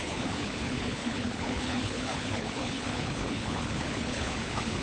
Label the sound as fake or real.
fake